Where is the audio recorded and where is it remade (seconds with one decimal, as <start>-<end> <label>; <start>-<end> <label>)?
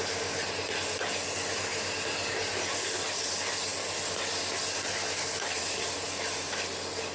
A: 0.0-7.1 recorded